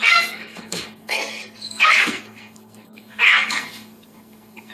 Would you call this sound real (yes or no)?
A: no